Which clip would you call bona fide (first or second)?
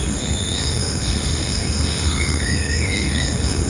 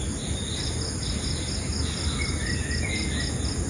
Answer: second